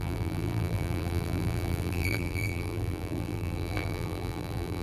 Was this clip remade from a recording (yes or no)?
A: yes